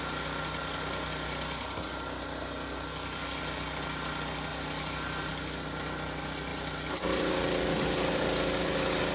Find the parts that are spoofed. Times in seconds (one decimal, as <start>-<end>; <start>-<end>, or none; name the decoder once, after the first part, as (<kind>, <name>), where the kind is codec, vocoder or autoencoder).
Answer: 4.5-5.3 (vocoder, BigVGAN v2); 6.5-8.7